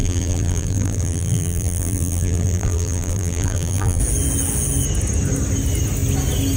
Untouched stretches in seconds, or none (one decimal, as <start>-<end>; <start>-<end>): 4.0-6.6